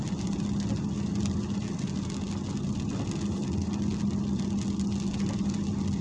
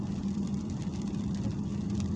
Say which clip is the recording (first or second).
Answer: first